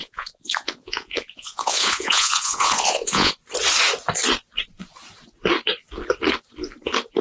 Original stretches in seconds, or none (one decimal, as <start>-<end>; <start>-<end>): 3.4-7.2